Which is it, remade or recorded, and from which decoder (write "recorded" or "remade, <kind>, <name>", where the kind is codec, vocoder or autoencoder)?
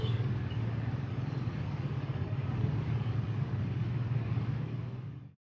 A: remade, codec, DAC